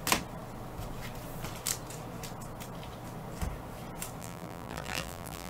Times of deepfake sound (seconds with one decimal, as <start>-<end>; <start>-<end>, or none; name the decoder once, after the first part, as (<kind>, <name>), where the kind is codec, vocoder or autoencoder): 4.2-5.5 (vocoder, BigVGAN v2)